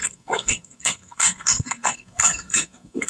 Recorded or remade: remade